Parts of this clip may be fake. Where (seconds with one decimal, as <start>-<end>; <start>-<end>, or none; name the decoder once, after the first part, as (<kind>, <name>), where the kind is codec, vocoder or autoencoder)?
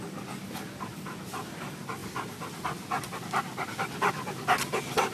none